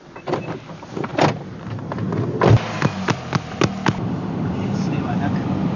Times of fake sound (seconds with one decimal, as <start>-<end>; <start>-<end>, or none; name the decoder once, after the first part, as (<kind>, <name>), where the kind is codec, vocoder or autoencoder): none